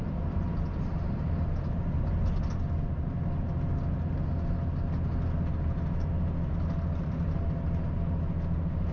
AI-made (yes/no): no